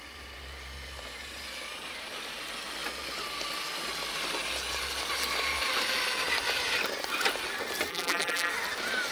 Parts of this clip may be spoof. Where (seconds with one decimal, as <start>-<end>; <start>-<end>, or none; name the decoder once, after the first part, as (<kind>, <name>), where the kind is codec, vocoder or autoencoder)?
7.9-8.5 (vocoder, BigVGAN v2)